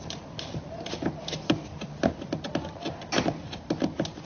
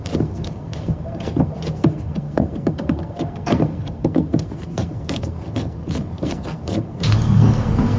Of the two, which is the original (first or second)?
first